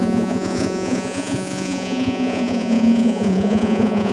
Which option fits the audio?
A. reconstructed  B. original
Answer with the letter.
A